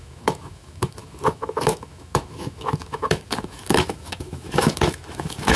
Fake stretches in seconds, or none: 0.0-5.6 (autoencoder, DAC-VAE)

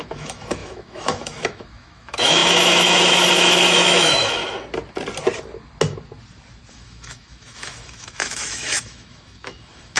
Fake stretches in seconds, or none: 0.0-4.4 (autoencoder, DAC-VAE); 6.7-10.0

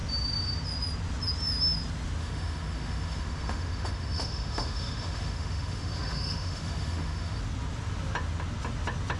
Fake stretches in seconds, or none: 2.2-7.4 (autoencoder, DAC-VAE)